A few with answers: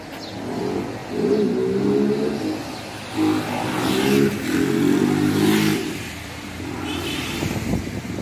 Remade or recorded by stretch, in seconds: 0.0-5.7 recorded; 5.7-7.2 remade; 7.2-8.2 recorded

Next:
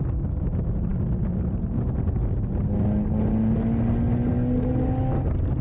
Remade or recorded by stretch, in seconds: 0.0-5.6 recorded

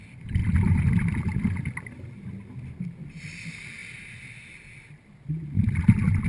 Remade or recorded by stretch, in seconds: 0.0-6.3 recorded